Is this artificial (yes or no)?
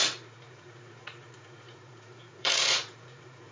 yes